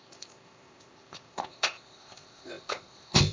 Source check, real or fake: fake